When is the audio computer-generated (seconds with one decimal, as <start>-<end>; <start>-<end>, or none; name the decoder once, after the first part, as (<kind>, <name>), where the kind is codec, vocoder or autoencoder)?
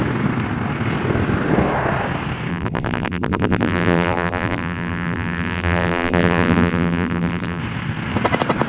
2.5-7.6 (vocoder, BigVGAN v2)